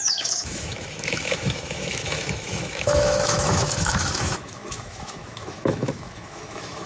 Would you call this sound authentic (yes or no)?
no